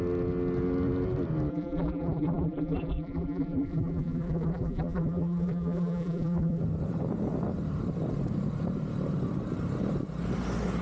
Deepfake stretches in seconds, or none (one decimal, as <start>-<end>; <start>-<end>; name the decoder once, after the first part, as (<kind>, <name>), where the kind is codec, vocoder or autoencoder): 1.5-6.6 (vocoder, BigVGAN v2)